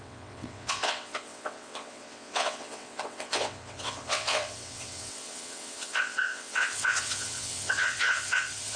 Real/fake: fake